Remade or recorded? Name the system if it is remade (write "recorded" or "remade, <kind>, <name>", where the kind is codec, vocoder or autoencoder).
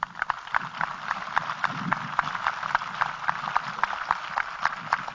recorded